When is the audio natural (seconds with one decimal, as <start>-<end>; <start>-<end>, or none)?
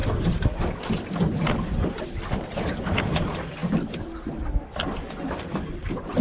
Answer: none